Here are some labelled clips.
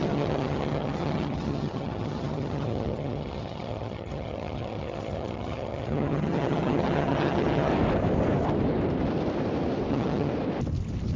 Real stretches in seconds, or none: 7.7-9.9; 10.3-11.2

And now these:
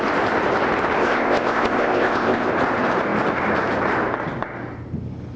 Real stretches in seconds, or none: 0.0-1.0; 2.5-5.4

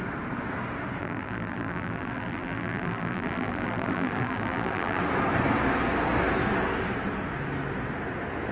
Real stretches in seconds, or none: 0.0-1.0; 5.0-8.5